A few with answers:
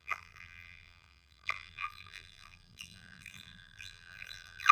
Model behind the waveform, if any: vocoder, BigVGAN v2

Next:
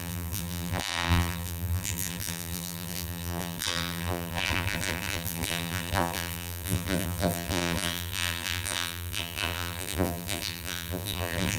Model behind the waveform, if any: vocoder, BigVGAN v2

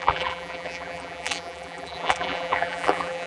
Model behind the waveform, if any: vocoder, BigVGAN v2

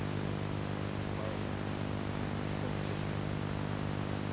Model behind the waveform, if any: none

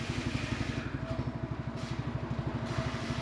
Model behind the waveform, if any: none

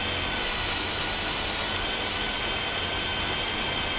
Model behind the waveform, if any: none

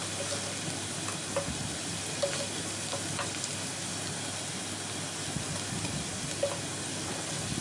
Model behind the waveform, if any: none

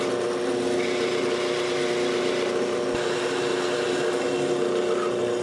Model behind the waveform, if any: none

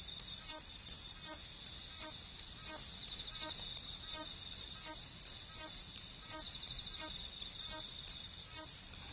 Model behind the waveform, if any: none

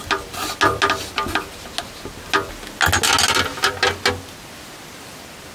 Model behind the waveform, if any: none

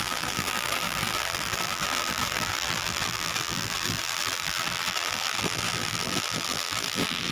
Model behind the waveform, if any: vocoder, BigVGAN v2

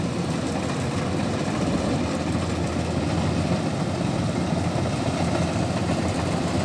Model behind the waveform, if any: vocoder, BigVGAN v2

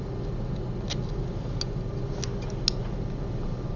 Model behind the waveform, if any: none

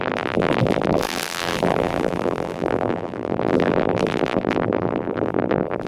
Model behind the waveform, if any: vocoder, BigVGAN v2